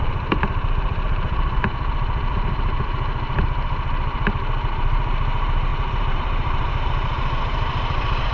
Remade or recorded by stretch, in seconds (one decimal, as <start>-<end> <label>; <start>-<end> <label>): 0.0-8.3 remade